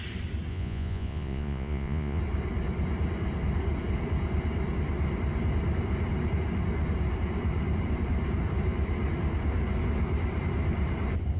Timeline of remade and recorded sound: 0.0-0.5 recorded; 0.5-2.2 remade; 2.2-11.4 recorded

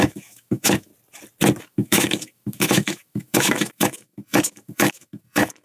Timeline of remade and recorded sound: 0.0-0.9 remade; 0.9-1.6 recorded; 1.6-5.6 remade

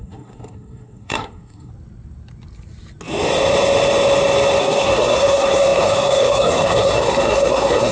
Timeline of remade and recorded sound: 0.0-1.7 remade; 1.7-4.6 recorded; 4.6-7.9 remade

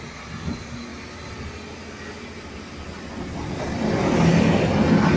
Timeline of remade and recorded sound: 0.0-5.2 recorded

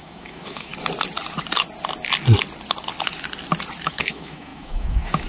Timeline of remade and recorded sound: 0.0-0.7 remade; 0.7-3.9 recorded; 3.9-5.3 remade